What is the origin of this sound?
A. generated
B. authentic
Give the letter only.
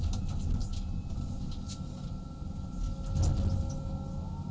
B